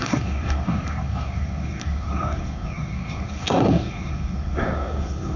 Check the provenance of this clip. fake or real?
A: fake